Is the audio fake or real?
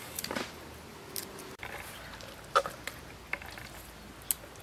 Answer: real